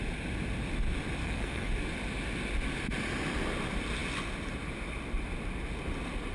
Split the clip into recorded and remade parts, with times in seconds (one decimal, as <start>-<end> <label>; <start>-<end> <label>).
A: 0.0-1.2 recorded; 1.2-1.7 remade; 1.7-6.3 recorded